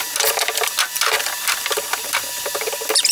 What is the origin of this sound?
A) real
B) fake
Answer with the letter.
A